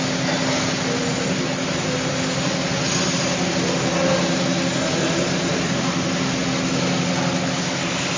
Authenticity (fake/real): real